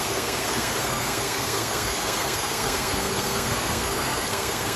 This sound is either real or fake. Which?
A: fake